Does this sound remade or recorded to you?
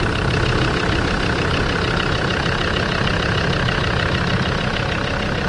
recorded